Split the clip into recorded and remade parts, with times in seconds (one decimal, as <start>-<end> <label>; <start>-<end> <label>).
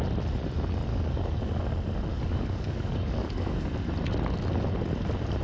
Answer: 0.0-0.9 recorded; 0.9-1.5 remade; 1.5-2.1 recorded; 2.1-3.7 remade; 3.7-5.4 recorded